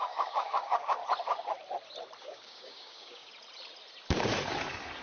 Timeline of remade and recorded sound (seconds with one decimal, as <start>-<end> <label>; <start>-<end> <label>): 0.0-1.0 remade; 1.0-2.2 recorded; 2.2-3.3 remade; 3.3-5.0 recorded